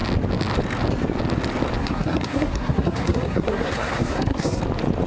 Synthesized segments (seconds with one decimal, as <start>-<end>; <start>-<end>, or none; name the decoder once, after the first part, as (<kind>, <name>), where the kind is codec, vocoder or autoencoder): 1.8-4.6 (codec, SNAC)